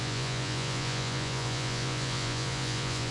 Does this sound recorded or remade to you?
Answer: remade